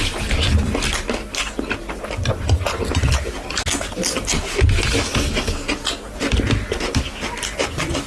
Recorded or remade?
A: recorded